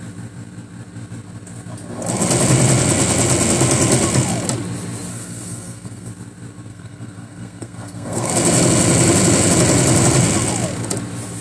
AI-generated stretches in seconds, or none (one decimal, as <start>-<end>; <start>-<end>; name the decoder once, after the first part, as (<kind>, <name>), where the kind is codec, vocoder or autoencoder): 5.1-6.1 (codec, SNAC); 6.7-8.3